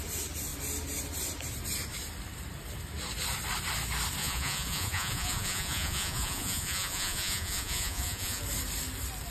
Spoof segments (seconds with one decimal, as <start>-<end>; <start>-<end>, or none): 4.2-8.4